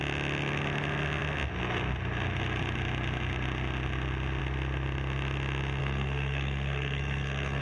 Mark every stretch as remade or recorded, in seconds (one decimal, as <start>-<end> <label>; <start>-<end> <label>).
0.0-5.8 recorded; 5.8-7.6 remade